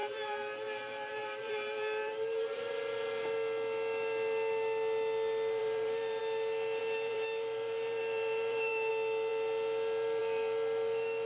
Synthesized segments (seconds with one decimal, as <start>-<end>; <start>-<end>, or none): 0.0-2.7; 5.6-6.2; 6.8-8.9